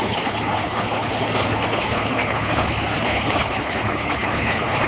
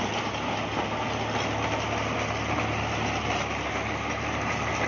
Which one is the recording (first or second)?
second